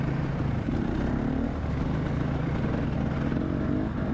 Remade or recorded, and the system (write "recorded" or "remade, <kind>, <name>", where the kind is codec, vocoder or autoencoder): remade, vocoder, BigVGAN v2